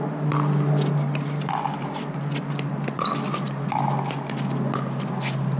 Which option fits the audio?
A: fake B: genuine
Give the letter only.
B